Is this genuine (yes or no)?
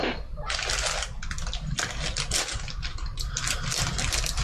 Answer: no